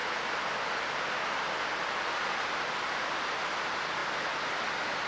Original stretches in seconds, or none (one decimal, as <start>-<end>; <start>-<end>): 0.0-5.1